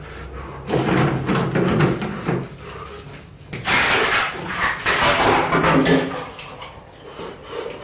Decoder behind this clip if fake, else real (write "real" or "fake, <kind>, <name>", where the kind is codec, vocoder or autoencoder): real